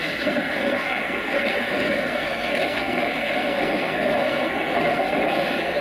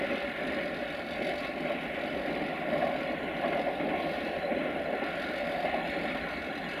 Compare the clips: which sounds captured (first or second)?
second